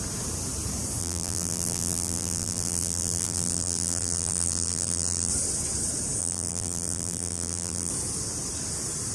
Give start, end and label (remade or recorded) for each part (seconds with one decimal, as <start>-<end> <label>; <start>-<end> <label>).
0.0-1.0 recorded; 1.0-5.3 remade; 5.3-6.2 recorded; 6.2-7.9 remade; 7.9-9.1 recorded